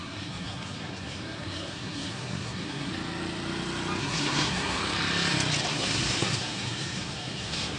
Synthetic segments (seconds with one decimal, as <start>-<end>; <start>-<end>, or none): 0.0-2.9; 4.0-4.8; 5.7-7.8

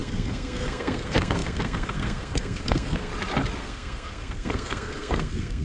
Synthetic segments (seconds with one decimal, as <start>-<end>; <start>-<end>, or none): 0.0-3.1; 3.6-5.6

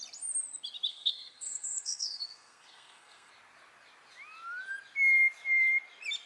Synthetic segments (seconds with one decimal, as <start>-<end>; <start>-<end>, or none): 0.9-3.3

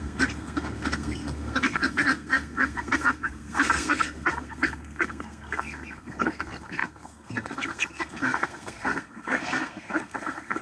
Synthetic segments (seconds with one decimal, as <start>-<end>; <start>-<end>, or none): 0.0-10.6

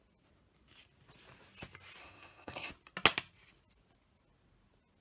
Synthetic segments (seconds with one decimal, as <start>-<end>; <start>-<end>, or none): 2.0-2.7

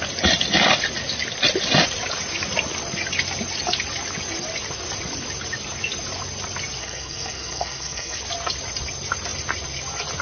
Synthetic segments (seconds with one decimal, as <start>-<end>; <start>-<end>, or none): 6.8-8.2